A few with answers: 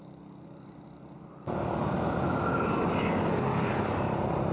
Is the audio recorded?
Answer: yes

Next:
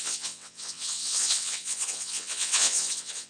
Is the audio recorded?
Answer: no